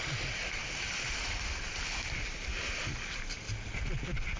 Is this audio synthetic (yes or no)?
no